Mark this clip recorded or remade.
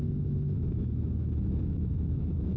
remade